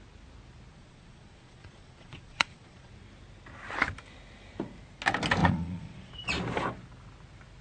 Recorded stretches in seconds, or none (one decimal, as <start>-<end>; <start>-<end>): 0.0-0.7; 2.9-5.4; 6.1-7.6